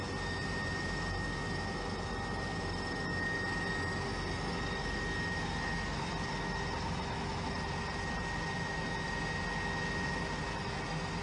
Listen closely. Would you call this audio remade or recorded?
recorded